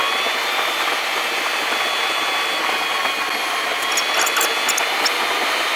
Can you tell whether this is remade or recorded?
recorded